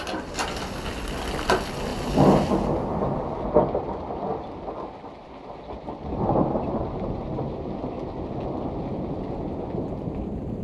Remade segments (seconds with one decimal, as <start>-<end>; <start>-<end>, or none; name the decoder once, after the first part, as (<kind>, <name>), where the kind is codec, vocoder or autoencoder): 5.2-7.6 (vocoder, BigVGAN v2)